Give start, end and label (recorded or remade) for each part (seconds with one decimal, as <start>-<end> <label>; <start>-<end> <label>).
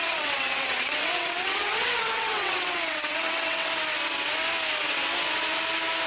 0.0-3.7 remade; 3.7-6.1 recorded